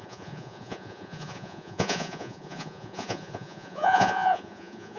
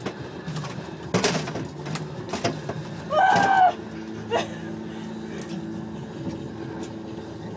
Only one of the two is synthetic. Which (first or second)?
first